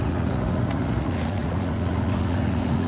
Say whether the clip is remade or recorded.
remade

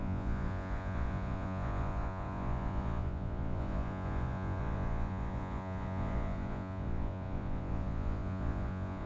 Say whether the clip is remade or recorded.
remade